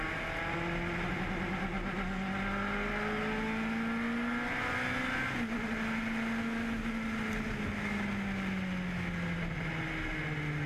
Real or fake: real